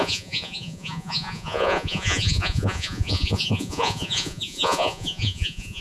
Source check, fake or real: fake